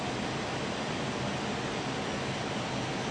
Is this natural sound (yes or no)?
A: yes